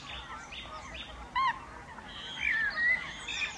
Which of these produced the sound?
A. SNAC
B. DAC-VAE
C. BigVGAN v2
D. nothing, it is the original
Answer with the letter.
D